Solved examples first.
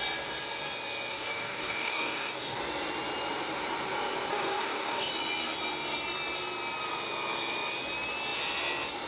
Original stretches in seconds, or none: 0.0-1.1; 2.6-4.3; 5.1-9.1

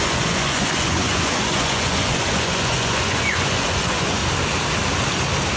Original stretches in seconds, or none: 4.2-5.6

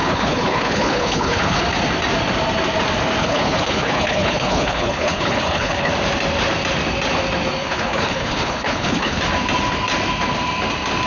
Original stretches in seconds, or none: 1.6-3.2; 5.9-7.6; 9.2-11.1

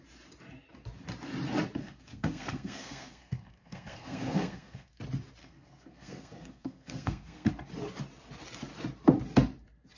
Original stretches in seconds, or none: 0.0-1.8; 5.0-5.4; 7.5-10.0